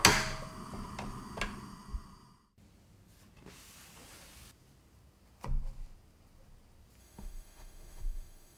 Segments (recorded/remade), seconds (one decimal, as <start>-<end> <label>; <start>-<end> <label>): 0.0-7.0 recorded; 7.0-8.6 remade